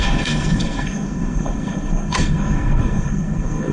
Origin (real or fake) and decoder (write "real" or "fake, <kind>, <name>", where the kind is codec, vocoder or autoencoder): fake, codec, SNAC